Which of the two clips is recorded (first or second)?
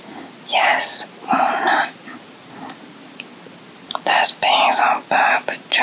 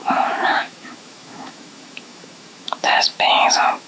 first